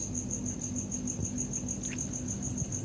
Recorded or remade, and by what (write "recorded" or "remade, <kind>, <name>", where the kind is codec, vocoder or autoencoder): recorded